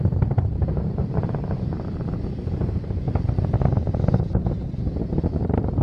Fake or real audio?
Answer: fake